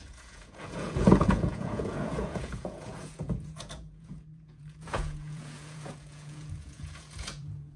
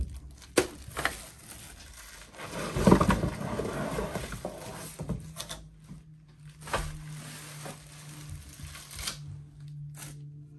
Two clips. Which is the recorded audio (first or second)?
second